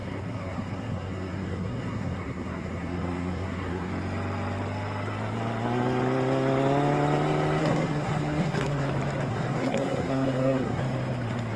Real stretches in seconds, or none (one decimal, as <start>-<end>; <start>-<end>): 3.9-7.6; 8.9-9.3; 10.8-11.6